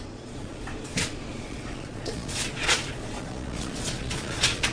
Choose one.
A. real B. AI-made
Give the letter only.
B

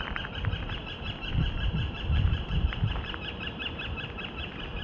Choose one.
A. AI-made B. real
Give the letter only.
B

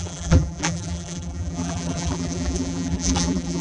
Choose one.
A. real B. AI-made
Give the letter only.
B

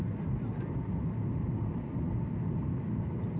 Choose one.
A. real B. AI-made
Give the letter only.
A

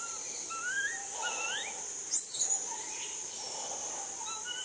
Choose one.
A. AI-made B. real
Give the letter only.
B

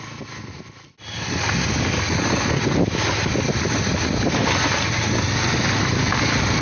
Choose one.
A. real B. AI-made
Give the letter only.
A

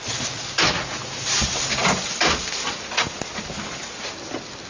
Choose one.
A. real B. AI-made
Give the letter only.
A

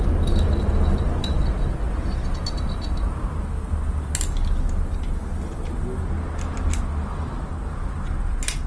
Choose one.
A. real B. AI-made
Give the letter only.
A